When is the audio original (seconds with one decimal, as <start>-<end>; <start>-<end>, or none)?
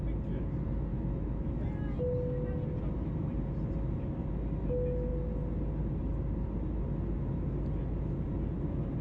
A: 0.0-0.9; 1.5-9.0